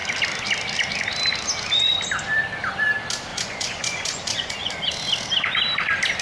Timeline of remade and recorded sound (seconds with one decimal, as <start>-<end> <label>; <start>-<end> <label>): 0.0-3.3 recorded; 3.3-4.7 remade; 4.7-6.2 recorded